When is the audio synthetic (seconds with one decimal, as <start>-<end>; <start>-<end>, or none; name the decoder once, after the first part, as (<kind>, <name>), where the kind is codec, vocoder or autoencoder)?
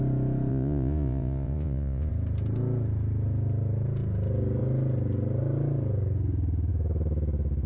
0.5-2.1 (vocoder, Vocos)